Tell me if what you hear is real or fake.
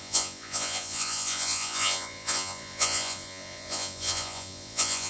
fake